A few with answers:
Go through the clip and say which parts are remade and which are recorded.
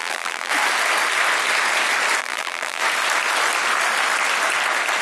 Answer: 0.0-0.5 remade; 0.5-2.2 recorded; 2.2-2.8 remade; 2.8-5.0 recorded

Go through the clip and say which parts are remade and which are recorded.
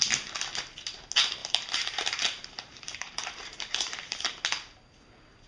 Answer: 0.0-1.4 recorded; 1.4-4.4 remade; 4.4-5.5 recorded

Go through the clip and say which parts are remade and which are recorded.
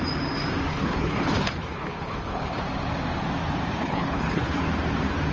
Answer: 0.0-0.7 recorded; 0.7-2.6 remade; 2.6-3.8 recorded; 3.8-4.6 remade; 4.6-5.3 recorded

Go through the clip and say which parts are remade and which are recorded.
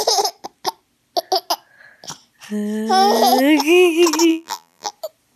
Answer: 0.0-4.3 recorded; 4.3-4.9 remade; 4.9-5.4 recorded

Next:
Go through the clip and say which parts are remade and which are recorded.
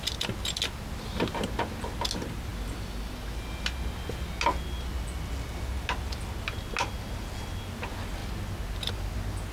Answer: 0.0-9.5 recorded